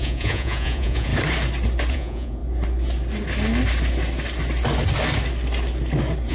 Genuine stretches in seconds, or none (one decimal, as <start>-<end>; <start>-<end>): 1.1-1.9; 2.4-6.3